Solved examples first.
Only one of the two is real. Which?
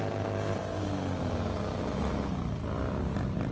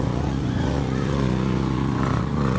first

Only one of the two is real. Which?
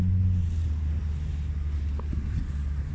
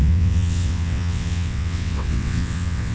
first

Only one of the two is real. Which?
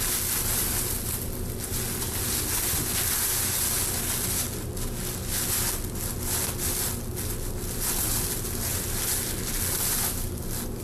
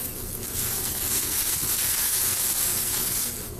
first